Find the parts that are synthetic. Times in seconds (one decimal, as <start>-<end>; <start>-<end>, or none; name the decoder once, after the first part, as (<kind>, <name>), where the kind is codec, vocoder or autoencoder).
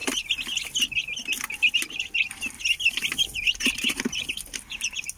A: none